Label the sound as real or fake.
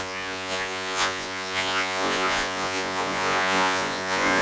fake